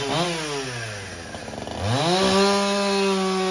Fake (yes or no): no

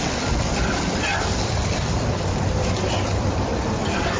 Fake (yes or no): no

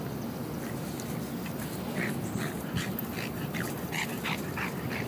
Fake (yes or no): no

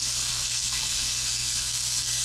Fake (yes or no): yes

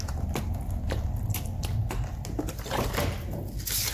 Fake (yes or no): no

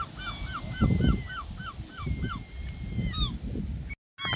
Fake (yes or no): no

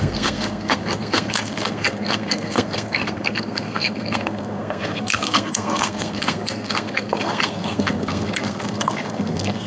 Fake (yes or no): yes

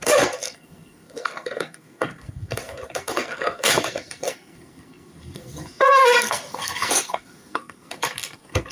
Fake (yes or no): yes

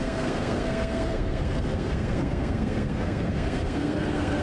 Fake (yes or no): yes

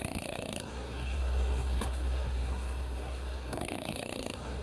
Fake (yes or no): yes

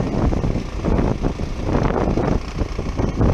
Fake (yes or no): no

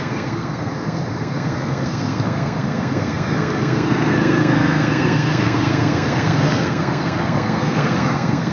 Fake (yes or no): yes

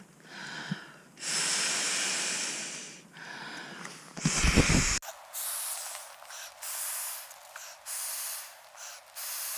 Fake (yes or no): no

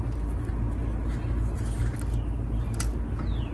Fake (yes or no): no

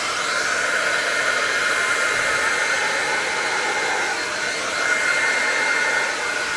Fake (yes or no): no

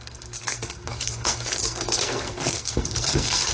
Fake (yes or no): yes